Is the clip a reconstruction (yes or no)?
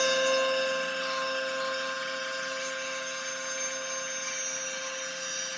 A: no